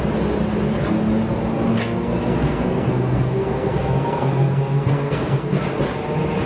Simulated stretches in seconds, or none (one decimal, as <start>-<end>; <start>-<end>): 1.7-5.6